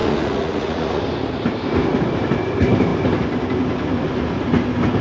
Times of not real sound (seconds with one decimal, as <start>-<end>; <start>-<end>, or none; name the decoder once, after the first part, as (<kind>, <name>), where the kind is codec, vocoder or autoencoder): 0.0-1.0 (vocoder, Vocos)